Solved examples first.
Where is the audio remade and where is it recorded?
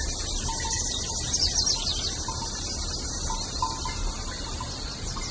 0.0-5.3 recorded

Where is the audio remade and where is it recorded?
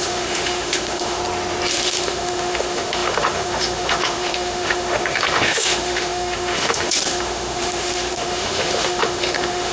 0.0-1.2 remade; 1.2-1.7 recorded; 1.7-9.7 remade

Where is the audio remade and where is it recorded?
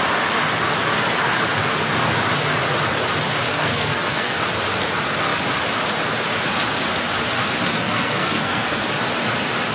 0.0-3.5 recorded; 3.5-4.4 remade; 4.4-7.7 recorded; 7.7-8.9 remade; 8.9-9.7 recorded